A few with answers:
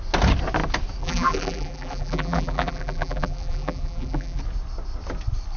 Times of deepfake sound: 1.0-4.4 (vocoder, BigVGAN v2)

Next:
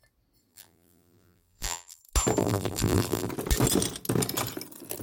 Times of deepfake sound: 0.5-2.0 (vocoder, BigVGAN v2); 2.4-3.3

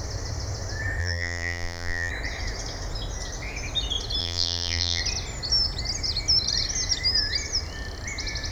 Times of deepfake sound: 1.0-2.1 (vocoder, BigVGAN v2); 4.2-5.0

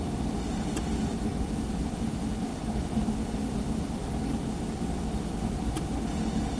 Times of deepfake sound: none

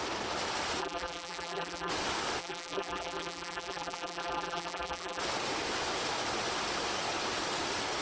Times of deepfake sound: 0.8-1.9 (vocoder, BigVGAN v2); 2.4-5.2

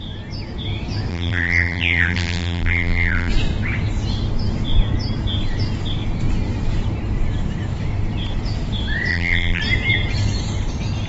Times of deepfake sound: 1.1-3.3 (vocoder, BigVGAN v2); 9.1-9.6

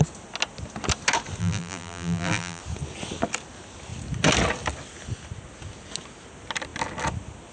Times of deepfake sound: 1.4-2.6 (vocoder, BigVGAN v2)